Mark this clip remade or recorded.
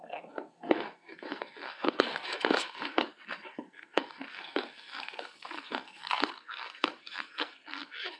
remade